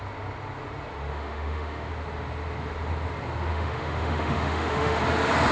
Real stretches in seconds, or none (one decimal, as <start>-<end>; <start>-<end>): 0.0-1.1; 1.9-3.5; 5.0-5.5